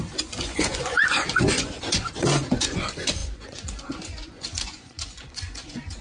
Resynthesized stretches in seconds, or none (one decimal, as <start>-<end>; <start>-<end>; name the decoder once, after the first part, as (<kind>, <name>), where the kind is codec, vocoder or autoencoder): 0.0-6.0 (vocoder, Vocos)